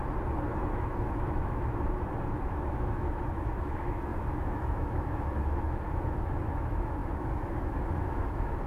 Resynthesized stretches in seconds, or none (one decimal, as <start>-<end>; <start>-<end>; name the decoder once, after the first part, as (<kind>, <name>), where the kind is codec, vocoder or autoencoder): 0.6-8.7 (autoencoder, DAC-VAE)